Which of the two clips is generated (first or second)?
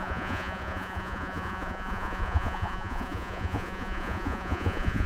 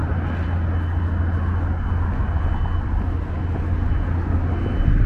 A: first